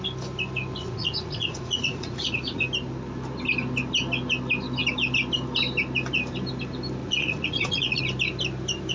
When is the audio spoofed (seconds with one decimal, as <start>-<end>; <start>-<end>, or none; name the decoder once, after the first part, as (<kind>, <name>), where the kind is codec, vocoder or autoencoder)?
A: 0.8-2.6 (vocoder, Vocos); 7.0-8.0